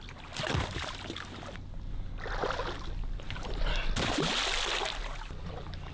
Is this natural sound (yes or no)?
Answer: yes